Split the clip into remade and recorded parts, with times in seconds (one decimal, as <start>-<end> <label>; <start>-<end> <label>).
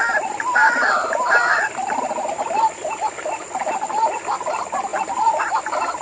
0.0-1.5 recorded; 1.5-2.0 remade; 2.0-4.9 recorded; 4.9-5.5 remade; 5.5-6.0 recorded